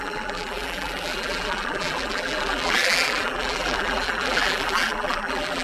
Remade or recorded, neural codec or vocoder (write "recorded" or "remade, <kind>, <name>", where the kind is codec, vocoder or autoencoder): remade, vocoder, BigVGAN v2